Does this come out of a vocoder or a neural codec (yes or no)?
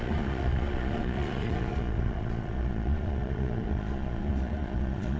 yes